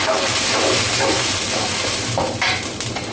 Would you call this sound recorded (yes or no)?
yes